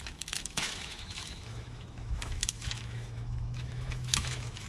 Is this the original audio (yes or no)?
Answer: no